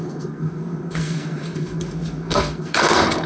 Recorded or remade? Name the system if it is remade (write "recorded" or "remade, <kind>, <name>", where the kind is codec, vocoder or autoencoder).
remade, codec, SNAC